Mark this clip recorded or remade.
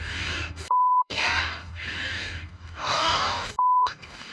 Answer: remade